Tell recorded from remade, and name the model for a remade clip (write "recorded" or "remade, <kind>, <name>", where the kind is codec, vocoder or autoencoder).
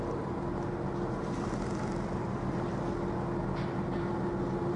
recorded